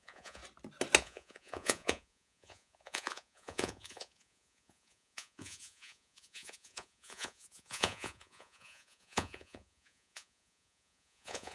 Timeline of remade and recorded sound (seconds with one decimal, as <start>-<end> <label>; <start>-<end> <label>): 0.0-0.4 remade; 0.4-1.0 recorded; 1.0-11.5 remade